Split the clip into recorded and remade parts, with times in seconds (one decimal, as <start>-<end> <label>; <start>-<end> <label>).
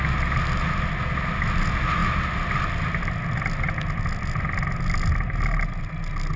0.0-6.4 recorded